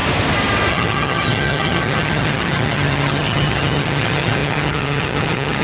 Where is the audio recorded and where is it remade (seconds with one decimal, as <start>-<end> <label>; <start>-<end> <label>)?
0.0-0.7 recorded; 0.7-5.6 remade